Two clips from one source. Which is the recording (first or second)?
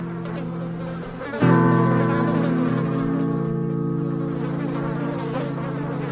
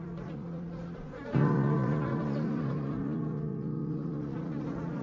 first